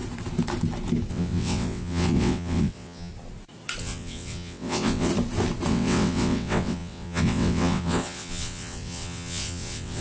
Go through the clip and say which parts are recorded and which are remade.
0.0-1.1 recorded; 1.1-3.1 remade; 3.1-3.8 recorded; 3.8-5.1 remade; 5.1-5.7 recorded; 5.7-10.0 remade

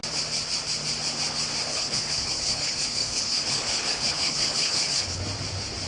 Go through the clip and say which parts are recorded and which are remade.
0.0-1.7 recorded; 1.7-5.2 remade; 5.2-5.9 recorded

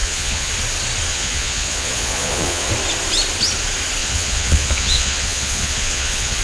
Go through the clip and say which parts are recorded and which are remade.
0.0-0.5 remade; 0.5-1.1 recorded; 1.1-2.7 remade; 2.7-4.0 recorded; 4.0-6.4 remade

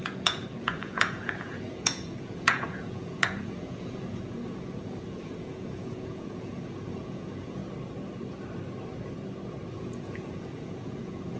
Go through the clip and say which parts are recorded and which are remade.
0.0-7.6 remade; 7.6-9.7 recorded; 9.7-11.4 remade

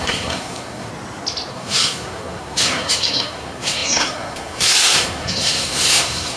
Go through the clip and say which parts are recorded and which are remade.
0.0-0.9 remade; 0.9-1.5 recorded; 1.5-6.4 remade

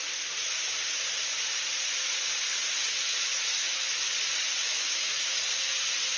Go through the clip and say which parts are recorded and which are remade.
0.0-3.1 recorded; 3.1-4.1 remade; 4.1-4.6 recorded; 4.6-5.4 remade; 5.4-6.2 recorded

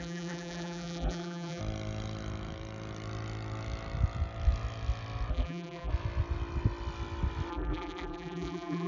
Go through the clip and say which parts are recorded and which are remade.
0.0-1.6 remade; 1.6-5.3 recorded; 5.3-5.9 remade; 5.9-7.5 recorded; 7.5-8.9 remade

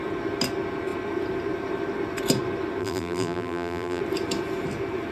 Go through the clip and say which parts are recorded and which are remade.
0.0-2.8 recorded; 2.8-4.0 remade; 4.0-5.1 recorded